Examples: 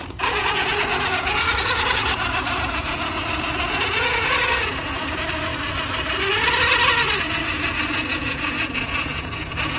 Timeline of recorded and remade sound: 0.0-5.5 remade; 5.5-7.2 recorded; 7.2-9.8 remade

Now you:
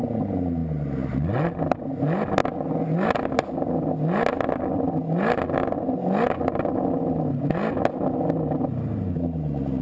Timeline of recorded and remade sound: 0.0-9.8 recorded

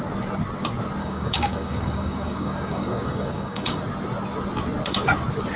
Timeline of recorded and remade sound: 0.0-1.0 recorded; 1.0-3.8 remade; 3.8-5.6 recorded

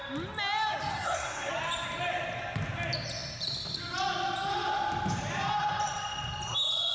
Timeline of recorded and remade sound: 0.0-0.9 recorded; 0.9-1.5 remade; 1.5-6.9 recorded

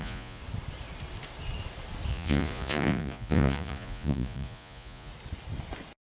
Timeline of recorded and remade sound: 0.0-0.4 remade; 0.4-2.1 recorded; 2.1-5.1 remade; 5.1-6.1 recorded

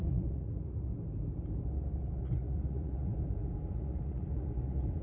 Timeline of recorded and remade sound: 0.0-0.9 remade; 0.9-2.2 recorded; 2.2-3.1 remade; 3.1-3.7 recorded; 3.7-5.0 remade